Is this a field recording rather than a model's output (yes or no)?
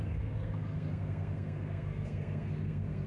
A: no